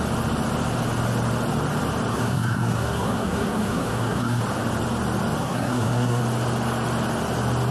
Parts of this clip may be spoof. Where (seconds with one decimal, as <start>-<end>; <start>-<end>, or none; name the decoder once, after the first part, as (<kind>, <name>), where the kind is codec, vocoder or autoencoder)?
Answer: 2.1-4.4 (codec, SNAC); 5.4-6.2